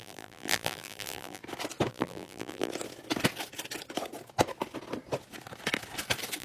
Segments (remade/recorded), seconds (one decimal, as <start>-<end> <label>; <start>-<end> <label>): 0.0-1.4 remade; 1.4-1.9 recorded; 1.9-2.7 remade; 2.7-6.4 recorded